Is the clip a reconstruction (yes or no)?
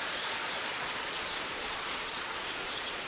yes